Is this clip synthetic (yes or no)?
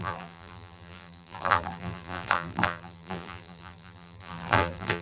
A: yes